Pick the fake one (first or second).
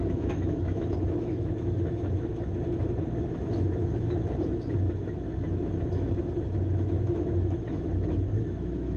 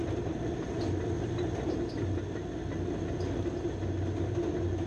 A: first